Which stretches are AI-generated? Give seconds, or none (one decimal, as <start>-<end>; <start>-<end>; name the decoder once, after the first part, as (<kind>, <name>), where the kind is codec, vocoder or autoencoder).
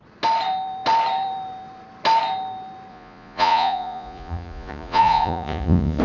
2.9-6.0 (vocoder, Vocos)